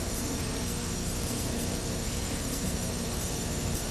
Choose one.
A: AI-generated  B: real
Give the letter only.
A